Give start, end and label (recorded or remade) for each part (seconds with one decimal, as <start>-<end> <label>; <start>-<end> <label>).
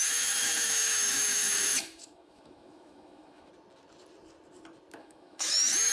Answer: 0.0-3.5 remade; 3.5-5.0 recorded; 5.0-5.9 remade